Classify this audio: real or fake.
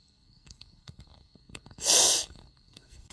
fake